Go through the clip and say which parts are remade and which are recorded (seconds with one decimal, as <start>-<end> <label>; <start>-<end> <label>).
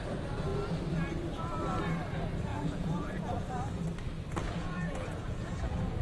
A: 0.0-2.5 recorded; 2.5-3.5 remade; 3.5-4.4 recorded; 4.4-6.0 remade